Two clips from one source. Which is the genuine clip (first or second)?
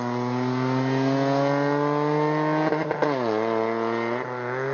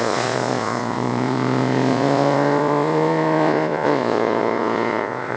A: first